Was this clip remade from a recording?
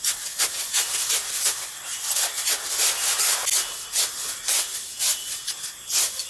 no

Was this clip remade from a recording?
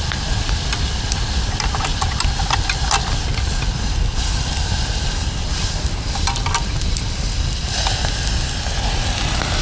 no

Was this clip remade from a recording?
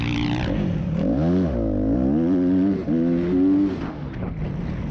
no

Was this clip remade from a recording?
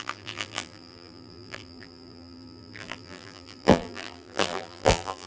yes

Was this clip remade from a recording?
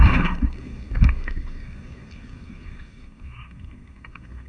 yes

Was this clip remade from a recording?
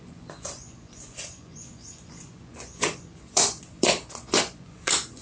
yes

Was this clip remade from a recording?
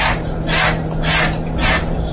no